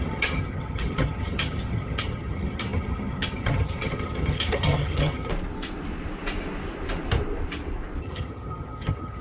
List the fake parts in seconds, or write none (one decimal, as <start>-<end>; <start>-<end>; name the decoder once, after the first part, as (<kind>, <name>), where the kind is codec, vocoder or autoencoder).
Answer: 0.0-5.3 (vocoder, HiFi-GAN); 8.0-9.2